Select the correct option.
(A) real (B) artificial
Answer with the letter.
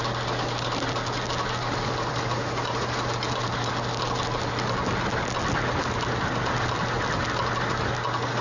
A